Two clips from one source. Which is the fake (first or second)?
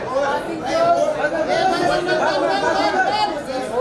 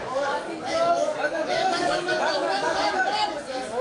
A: second